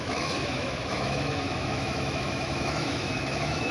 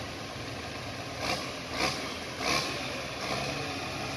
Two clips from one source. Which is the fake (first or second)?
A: first